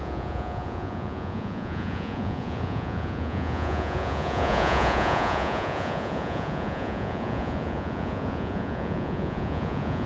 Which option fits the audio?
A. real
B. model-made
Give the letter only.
B